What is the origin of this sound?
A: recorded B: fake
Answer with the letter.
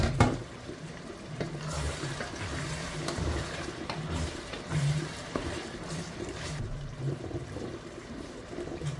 B